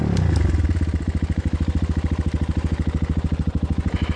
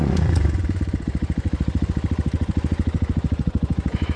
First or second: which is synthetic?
second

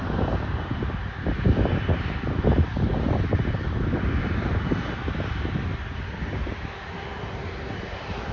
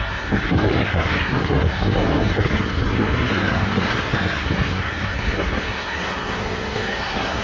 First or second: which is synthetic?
second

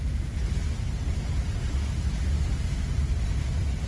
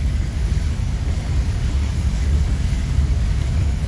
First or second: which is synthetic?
second